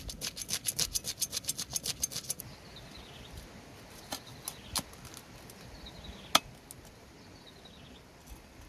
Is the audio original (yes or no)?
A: yes